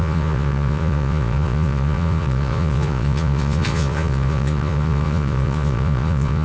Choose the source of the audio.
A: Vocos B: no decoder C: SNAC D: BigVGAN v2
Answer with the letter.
A